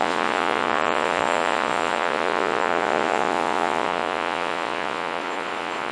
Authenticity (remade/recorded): remade